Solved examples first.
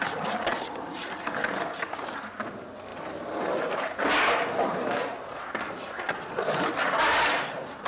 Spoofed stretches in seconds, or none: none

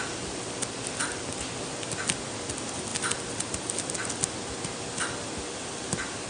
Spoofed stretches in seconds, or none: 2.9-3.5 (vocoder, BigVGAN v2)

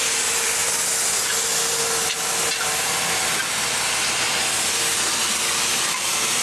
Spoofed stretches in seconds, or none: none